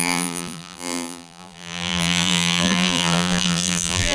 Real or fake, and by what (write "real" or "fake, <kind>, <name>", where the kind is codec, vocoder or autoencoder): fake, vocoder, BigVGAN v2